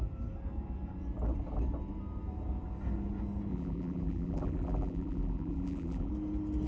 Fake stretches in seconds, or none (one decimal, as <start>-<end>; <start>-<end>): 3.5-6.1